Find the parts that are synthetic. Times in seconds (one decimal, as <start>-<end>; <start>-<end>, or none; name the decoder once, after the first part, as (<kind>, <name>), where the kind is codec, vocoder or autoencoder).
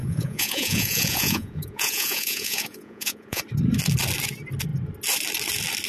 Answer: 0.0-3.4 (vocoder, Vocos)